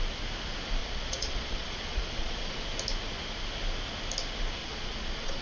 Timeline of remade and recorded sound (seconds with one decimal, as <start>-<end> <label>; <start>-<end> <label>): 0.0-0.8 recorded; 0.8-2.5 remade; 2.5-4.6 recorded; 4.6-5.4 remade

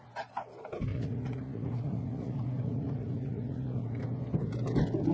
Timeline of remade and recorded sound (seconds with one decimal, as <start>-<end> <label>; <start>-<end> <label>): 0.0-0.9 recorded; 0.9-4.0 remade; 4.0-5.1 recorded

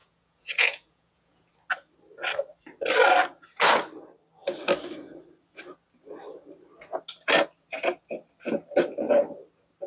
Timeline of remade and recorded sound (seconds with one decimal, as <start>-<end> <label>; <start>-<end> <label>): 0.0-1.5 remade; 1.5-9.9 recorded